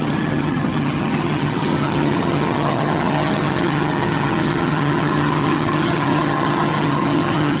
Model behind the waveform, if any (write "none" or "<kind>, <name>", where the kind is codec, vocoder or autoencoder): vocoder, HiFi-GAN